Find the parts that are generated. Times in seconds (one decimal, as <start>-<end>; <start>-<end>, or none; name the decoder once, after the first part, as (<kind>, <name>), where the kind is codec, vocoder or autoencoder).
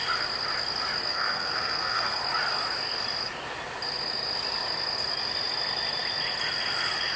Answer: 1.1-2.2 (codec, SNAC)